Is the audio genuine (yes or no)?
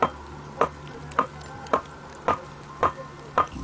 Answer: yes